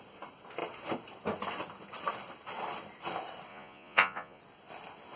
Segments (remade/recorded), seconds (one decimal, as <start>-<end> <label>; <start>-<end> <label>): 0.0-3.5 recorded; 3.5-4.4 remade; 4.4-5.2 recorded